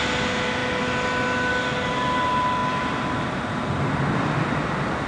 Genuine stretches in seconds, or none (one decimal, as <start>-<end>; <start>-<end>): 0.0-2.6; 3.8-5.1